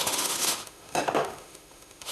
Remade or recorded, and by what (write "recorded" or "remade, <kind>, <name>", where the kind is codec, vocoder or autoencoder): remade, autoencoder, DAC-VAE